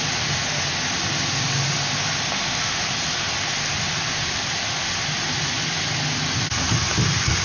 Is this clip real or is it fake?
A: real